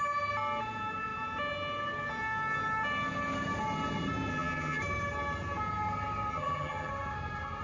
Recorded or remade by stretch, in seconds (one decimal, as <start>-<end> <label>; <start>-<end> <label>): 0.0-4.3 recorded; 4.3-4.8 remade; 4.8-6.3 recorded; 6.3-6.9 remade; 6.9-7.6 recorded